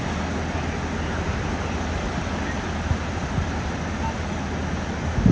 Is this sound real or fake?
real